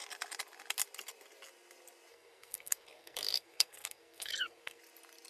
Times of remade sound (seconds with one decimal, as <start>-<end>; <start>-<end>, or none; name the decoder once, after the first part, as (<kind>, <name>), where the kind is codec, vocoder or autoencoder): 2.1-4.8 (codec, SNAC)